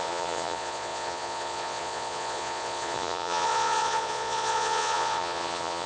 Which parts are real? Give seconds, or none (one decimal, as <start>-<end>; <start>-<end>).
none